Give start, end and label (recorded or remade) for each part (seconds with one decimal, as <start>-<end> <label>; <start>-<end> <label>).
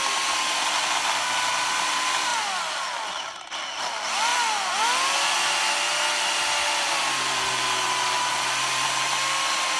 0.0-9.8 recorded